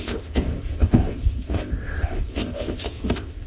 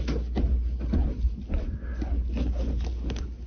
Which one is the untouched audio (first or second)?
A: second